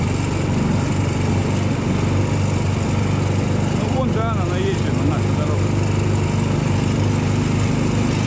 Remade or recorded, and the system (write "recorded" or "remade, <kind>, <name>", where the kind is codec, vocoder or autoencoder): recorded